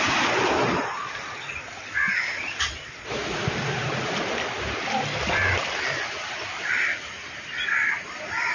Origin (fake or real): fake